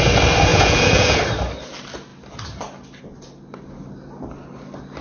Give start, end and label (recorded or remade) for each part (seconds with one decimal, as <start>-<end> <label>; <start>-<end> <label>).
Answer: 0.0-0.5 recorded; 0.5-1.2 remade; 1.2-5.0 recorded